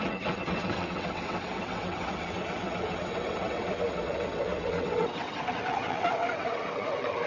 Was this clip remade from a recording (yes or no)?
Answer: yes